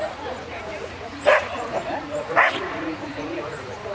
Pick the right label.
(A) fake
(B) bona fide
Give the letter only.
A